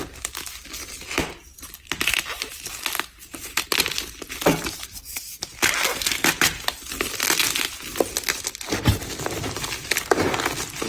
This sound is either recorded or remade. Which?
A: recorded